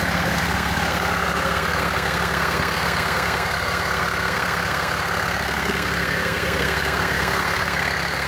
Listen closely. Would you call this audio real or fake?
fake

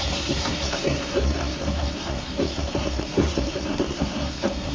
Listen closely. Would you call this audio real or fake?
fake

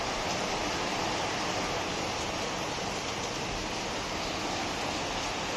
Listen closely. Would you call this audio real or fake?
real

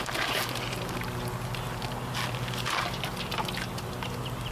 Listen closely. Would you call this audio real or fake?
real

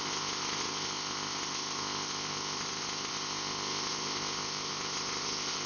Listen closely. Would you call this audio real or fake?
fake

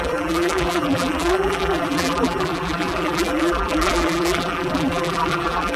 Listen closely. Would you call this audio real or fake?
fake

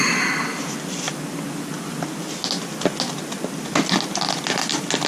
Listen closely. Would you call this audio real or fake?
real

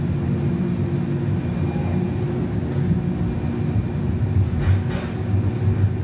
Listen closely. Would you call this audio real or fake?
real